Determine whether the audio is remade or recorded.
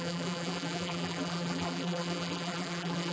remade